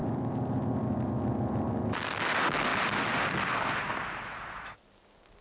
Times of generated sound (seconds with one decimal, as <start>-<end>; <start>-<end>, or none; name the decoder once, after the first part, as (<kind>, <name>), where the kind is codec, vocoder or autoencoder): none